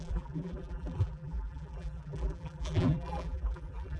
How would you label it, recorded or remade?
remade